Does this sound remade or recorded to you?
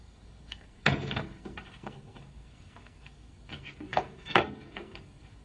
remade